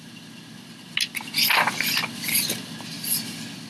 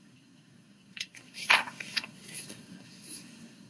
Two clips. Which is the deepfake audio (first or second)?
second